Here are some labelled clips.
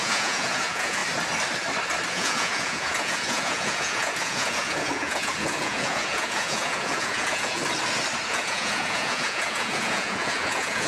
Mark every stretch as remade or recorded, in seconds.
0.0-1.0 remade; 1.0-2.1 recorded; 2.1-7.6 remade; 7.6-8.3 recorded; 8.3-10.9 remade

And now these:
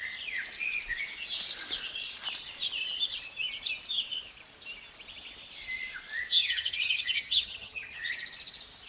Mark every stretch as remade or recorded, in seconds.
0.0-6.4 recorded; 6.4-8.0 remade; 8.0-8.9 recorded

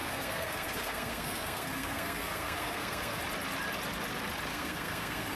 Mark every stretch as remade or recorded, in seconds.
0.0-3.2 remade; 3.2-4.5 recorded; 4.5-5.4 remade